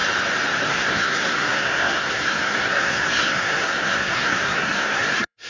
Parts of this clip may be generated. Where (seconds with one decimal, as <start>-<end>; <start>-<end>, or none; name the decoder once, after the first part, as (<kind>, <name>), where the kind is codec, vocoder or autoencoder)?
0.7-5.5 (codec, SNAC)